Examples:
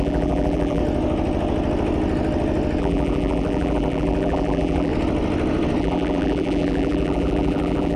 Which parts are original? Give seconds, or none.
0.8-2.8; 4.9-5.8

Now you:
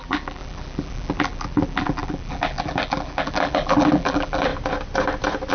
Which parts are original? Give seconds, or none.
4.5-5.5

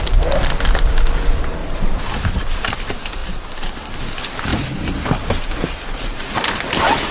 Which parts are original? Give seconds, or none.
0.0-1.6; 2.7-3.2; 4.1-4.5

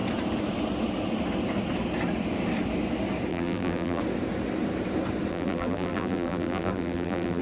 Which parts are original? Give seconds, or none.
0.0-3.3; 4.0-5.3

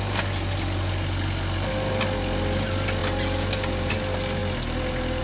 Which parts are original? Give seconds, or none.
0.0-5.2

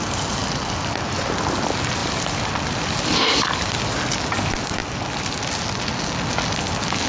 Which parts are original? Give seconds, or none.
0.0-0.4; 0.9-2.0; 3.8-7.1

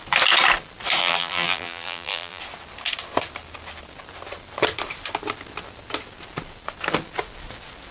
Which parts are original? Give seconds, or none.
0.0-1.0; 2.4-7.9